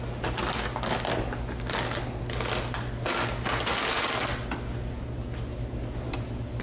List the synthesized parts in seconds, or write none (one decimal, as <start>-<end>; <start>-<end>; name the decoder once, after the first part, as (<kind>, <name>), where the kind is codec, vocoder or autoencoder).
none